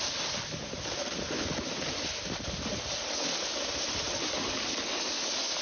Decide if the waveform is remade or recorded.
recorded